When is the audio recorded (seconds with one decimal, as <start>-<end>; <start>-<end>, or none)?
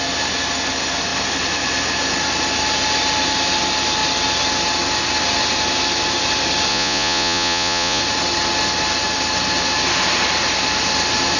0.0-6.7; 8.0-11.4